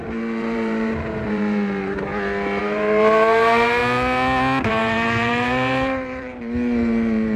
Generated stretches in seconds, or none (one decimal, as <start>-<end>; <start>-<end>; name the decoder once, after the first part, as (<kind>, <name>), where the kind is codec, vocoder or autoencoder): 0.0-2.1 (vocoder, BigVGAN v2); 2.6-3.8; 4.7-7.4